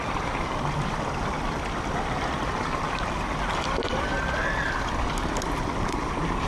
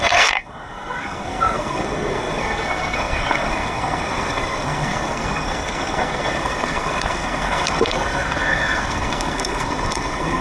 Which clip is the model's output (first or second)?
second